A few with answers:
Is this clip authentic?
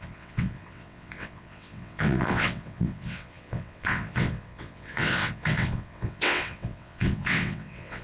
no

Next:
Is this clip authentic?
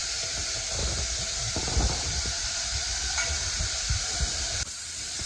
yes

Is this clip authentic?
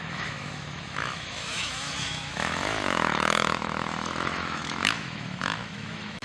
no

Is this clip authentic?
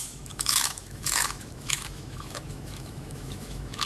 no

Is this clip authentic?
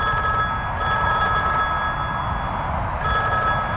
yes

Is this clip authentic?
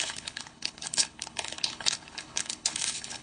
no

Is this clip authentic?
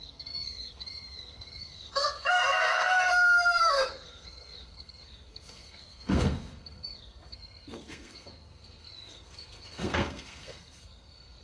no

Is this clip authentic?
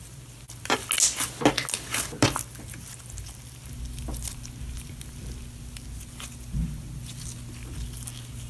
yes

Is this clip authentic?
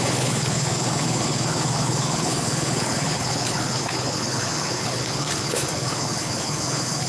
no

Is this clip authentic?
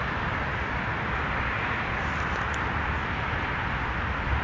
yes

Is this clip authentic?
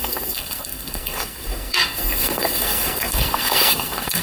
no